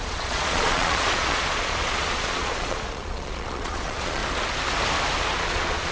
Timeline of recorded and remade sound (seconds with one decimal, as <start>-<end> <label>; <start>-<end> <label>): 0.0-4.2 remade; 4.2-5.2 recorded; 5.2-5.9 remade